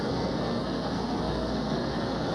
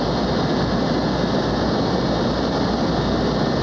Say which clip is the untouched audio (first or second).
second